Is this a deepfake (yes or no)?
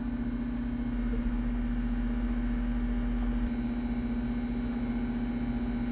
no